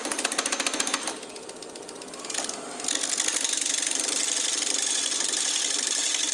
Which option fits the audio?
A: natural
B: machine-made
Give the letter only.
A